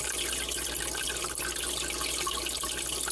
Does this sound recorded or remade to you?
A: recorded